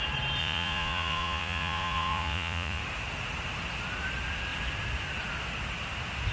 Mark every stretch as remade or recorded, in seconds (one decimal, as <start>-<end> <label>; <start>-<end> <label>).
0.0-0.4 recorded; 0.4-2.8 remade; 2.8-6.3 recorded